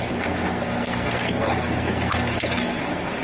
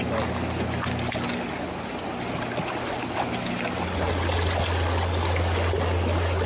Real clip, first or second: second